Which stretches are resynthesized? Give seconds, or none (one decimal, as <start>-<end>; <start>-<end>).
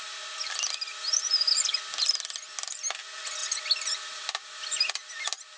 none